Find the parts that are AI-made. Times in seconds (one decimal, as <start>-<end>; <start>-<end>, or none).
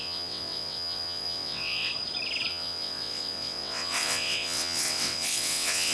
0.0-1.9; 2.5-5.9